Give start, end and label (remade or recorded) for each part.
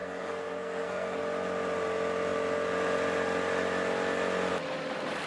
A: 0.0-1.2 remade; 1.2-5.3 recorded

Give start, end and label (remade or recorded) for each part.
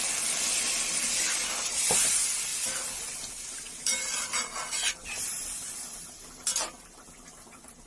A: 0.0-7.9 recorded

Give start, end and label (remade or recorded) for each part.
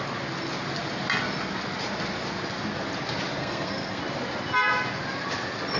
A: 0.0-3.4 recorded; 3.4-4.0 remade; 4.0-5.8 recorded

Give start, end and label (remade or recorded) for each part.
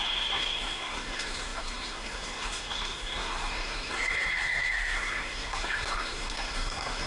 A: 0.0-7.1 remade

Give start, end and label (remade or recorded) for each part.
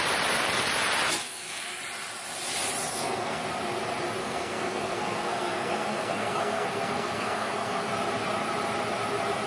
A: 0.0-1.2 recorded; 1.2-1.8 remade; 1.8-2.9 recorded; 2.9-3.4 remade; 3.4-4.2 recorded; 4.2-7.9 remade; 7.9-9.5 recorded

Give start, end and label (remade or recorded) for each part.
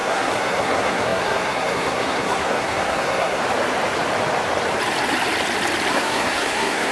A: 0.0-3.4 remade; 3.4-5.9 recorded; 5.9-6.9 remade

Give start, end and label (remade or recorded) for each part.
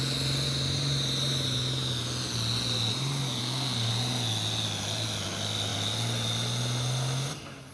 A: 0.0-3.4 recorded; 3.4-3.9 remade; 3.9-7.7 recorded